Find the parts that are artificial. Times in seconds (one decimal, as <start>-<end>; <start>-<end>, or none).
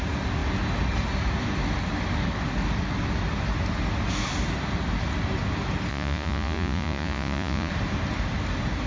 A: 5.9-7.7